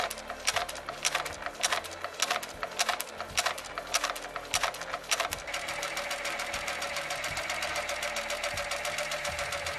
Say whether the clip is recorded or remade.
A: recorded